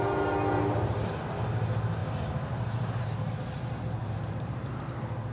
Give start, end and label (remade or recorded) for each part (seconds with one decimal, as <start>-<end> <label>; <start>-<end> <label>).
0.0-4.0 recorded; 4.0-5.3 remade